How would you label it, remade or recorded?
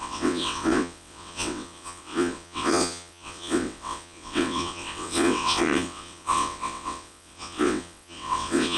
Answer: remade